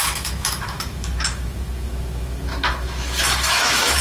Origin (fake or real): fake